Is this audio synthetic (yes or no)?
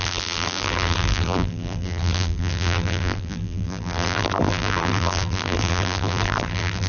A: yes